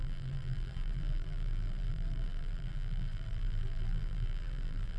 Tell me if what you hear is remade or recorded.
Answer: remade